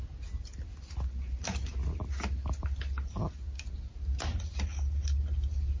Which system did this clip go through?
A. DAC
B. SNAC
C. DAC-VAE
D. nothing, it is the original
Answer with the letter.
D